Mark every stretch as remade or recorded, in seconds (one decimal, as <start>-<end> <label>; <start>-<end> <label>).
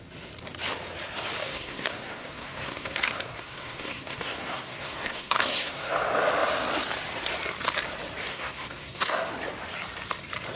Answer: 0.0-1.4 recorded; 1.4-5.9 remade; 5.9-8.3 recorded; 8.3-9.3 remade; 9.3-10.6 recorded